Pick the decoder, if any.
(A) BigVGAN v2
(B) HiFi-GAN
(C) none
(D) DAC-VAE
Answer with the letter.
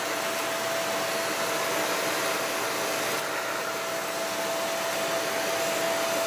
C